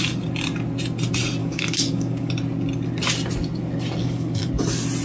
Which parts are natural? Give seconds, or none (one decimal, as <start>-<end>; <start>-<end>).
0.0-1.4; 2.3-4.0; 4.5-5.0